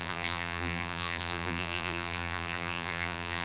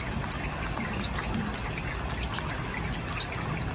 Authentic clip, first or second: second